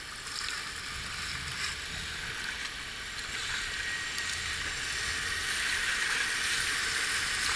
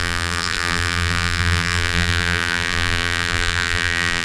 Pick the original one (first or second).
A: first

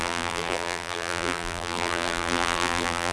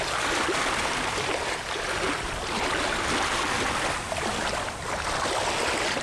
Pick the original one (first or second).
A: second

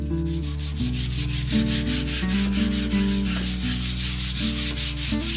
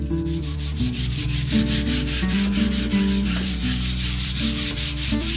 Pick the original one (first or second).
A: first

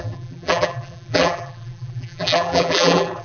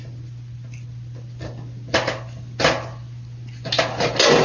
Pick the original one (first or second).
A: second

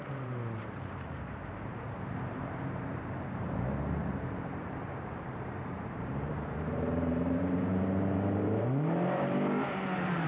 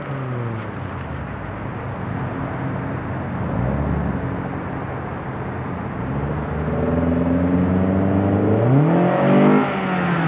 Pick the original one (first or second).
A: second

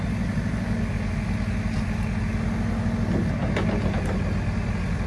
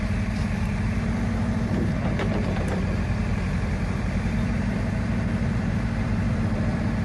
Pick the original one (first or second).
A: first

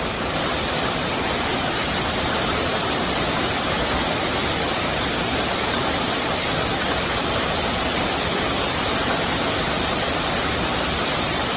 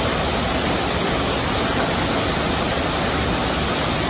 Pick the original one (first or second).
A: second